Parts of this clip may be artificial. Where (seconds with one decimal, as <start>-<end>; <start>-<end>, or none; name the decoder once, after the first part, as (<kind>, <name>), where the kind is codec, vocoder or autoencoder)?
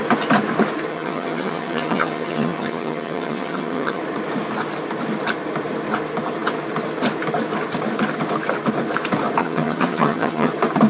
0.9-4.0 (vocoder, HiFi-GAN); 9.4-10.5